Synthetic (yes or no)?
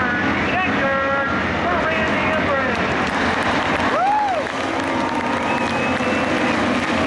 no